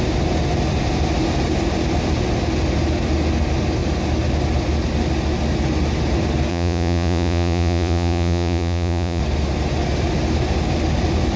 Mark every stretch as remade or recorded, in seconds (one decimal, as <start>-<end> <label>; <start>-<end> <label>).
0.0-6.5 recorded; 6.5-9.2 remade; 9.2-11.4 recorded